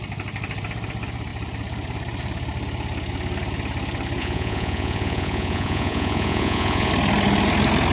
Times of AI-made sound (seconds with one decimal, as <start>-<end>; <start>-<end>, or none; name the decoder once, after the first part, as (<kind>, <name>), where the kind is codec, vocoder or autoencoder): 4.2-6.9 (vocoder, Vocos)